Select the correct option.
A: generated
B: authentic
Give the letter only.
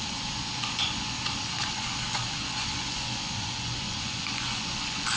A